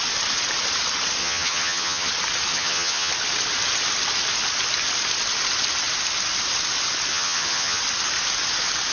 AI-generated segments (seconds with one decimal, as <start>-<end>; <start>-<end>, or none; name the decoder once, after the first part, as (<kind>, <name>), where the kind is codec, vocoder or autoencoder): 1.2-2.1 (vocoder, HiFi-GAN); 2.5-3.1; 7.1-7.8